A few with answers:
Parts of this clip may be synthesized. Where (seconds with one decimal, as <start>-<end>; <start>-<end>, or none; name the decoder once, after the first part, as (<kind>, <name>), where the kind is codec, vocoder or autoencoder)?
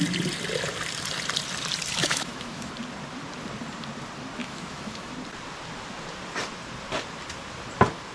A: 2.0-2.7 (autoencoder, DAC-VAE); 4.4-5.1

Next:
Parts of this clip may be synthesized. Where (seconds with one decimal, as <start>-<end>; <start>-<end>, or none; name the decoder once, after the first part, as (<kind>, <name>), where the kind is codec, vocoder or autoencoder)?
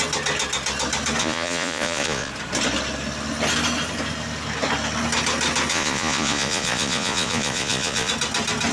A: 1.2-2.3 (vocoder, Vocos); 5.7-8.1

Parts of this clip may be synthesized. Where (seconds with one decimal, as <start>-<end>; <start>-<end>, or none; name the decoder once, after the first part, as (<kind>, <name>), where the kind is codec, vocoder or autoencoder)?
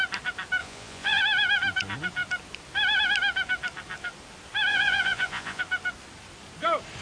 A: 0.6-1.2 (vocoder, Vocos); 4.7-5.6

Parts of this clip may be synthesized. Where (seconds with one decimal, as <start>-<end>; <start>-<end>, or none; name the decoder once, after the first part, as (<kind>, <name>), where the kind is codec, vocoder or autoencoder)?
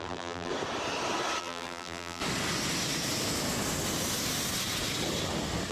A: 0.0-0.5 (vocoder, BigVGAN v2); 1.4-2.2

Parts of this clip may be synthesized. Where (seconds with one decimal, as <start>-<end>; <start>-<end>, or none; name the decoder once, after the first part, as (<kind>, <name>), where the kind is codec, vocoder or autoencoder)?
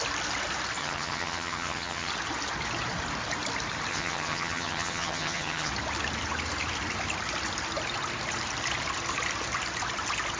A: 0.8-2.1 (vocoder, HiFi-GAN); 3.9-5.7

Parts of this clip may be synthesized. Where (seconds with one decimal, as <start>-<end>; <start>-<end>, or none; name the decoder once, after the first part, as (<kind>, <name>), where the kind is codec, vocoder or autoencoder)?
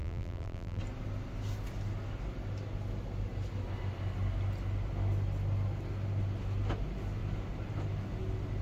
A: 0.0-0.8 (vocoder, BigVGAN v2)